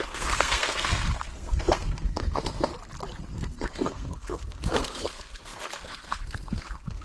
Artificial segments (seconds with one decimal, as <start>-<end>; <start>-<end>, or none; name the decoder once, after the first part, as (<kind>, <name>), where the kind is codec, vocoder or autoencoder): 0.0-2.7 (codec, SNAC); 3.3-7.0